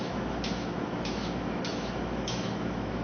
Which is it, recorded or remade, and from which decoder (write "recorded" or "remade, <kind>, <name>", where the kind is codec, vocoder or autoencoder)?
remade, autoencoder, DAC-VAE